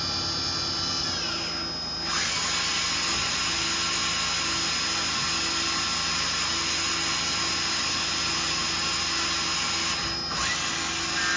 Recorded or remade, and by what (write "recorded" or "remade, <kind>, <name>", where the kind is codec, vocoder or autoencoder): recorded